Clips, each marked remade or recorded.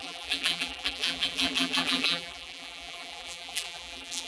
remade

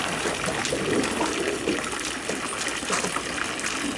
recorded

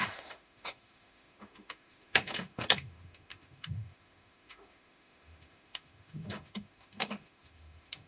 remade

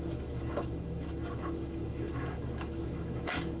remade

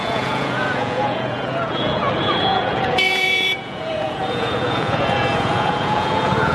remade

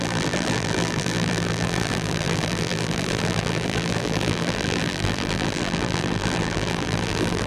remade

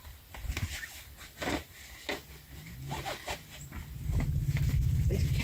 recorded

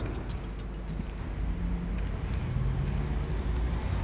recorded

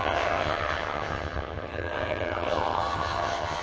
remade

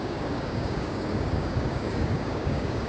remade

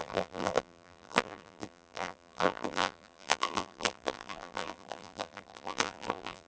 remade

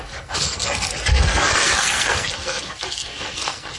remade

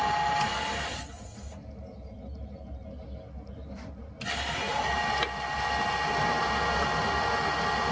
recorded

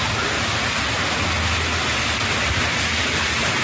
recorded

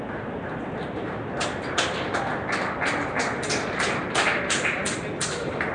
recorded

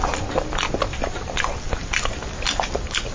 recorded